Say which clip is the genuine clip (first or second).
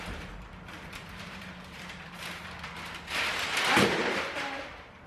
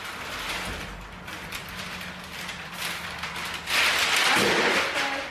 second